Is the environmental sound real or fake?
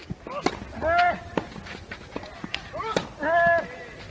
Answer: real